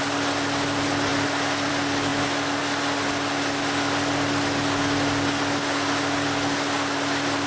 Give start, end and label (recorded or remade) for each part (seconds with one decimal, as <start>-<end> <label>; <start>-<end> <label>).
0.0-7.5 recorded

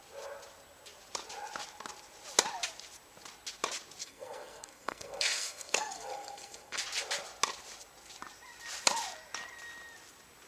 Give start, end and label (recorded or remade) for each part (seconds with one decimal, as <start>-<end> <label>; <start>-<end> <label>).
0.0-4.0 recorded; 4.0-6.8 remade; 6.8-10.5 recorded

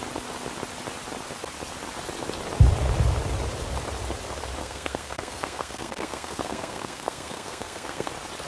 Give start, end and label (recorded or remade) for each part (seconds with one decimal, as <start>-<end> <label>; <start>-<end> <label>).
0.0-4.6 recorded; 4.6-8.1 remade; 8.1-8.5 recorded

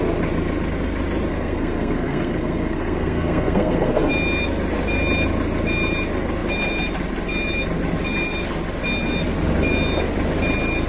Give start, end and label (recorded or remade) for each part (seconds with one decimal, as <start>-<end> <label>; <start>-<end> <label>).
0.0-1.3 recorded; 1.3-4.1 remade; 4.1-10.9 recorded

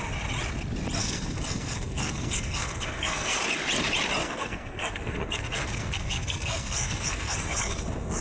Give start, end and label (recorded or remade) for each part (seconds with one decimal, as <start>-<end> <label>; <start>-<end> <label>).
0.0-1.0 recorded; 1.0-3.4 remade; 3.4-4.2 recorded; 4.2-8.2 remade

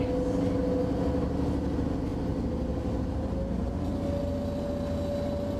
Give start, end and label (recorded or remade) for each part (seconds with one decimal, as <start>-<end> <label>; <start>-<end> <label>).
0.0-5.6 recorded

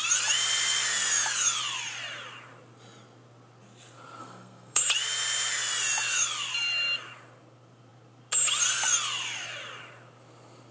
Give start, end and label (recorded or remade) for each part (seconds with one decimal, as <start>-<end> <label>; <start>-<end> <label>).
0.0-4.2 recorded; 4.2-4.8 remade; 4.8-10.7 recorded